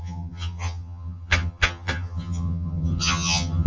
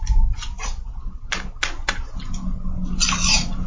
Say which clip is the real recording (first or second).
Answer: second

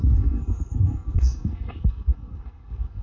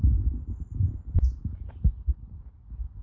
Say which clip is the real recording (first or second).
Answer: second